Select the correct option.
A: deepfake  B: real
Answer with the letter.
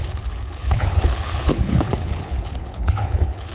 A